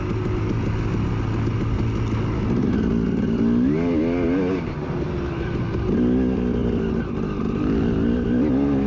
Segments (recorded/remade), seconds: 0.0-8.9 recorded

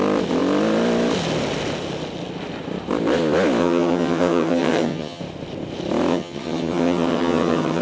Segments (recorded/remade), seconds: 0.0-3.6 recorded; 3.6-5.2 remade; 5.2-6.1 recorded; 6.1-7.8 remade